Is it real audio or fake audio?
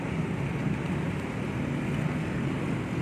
real